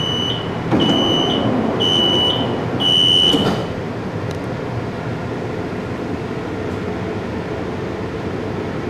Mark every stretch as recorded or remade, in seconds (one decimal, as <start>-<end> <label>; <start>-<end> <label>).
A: 0.0-3.6 recorded; 3.6-4.2 remade; 4.2-8.9 recorded

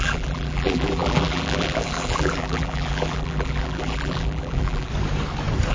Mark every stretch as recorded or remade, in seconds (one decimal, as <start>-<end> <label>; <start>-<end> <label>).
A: 0.0-4.9 remade; 4.9-5.7 recorded

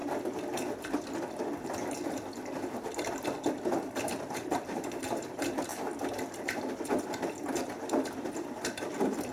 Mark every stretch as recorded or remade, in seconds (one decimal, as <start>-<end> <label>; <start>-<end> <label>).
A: 0.0-4.3 recorded; 4.3-5.7 remade; 5.7-7.5 recorded; 7.5-9.3 remade

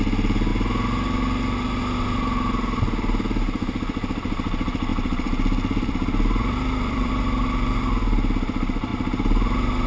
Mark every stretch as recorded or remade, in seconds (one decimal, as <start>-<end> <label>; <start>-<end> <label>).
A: 0.0-4.9 recorded; 4.9-7.1 remade; 7.1-9.9 recorded